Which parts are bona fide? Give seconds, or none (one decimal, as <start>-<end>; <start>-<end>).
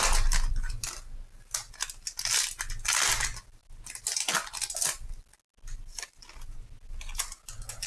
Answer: 0.0-7.9